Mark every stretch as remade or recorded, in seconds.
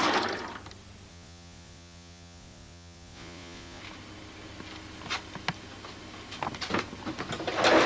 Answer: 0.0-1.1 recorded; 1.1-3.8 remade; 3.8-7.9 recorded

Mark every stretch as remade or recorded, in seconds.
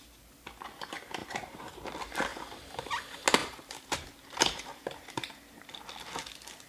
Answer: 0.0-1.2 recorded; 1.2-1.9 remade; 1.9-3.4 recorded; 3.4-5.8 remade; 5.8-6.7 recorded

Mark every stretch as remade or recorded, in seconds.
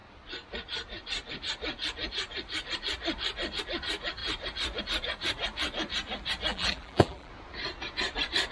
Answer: 0.0-6.5 recorded; 6.5-7.3 remade; 7.3-8.5 recorded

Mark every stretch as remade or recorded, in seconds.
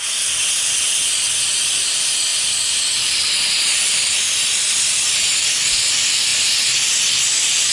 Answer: 0.0-7.7 recorded